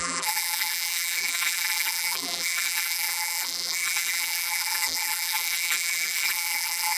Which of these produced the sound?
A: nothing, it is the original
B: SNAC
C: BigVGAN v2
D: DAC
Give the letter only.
C